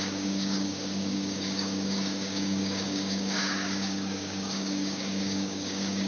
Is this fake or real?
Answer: fake